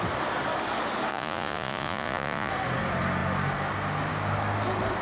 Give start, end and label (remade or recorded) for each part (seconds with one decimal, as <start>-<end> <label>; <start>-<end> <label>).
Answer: 0.0-1.1 recorded; 1.1-2.5 remade; 2.5-5.0 recorded